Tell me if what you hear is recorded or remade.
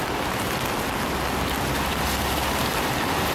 recorded